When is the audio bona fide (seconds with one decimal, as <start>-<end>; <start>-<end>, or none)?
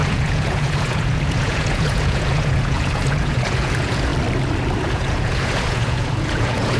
4.1-4.8